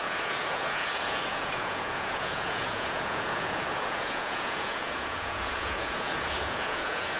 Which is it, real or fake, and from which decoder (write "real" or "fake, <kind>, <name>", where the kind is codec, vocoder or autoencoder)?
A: fake, vocoder, Vocos